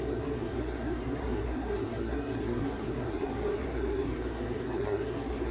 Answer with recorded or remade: remade